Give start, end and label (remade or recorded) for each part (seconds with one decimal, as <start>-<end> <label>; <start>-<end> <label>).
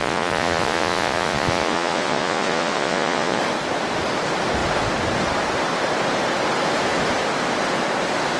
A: 0.0-3.4 remade; 3.4-8.4 recorded